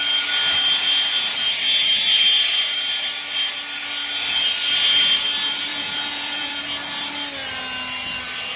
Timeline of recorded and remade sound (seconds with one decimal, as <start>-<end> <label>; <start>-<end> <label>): 0.0-5.7 recorded; 5.7-6.5 remade; 6.5-8.6 recorded